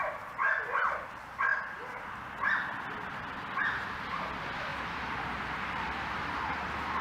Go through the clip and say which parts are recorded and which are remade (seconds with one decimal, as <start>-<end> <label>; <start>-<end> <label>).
0.0-4.7 recorded; 4.7-7.0 remade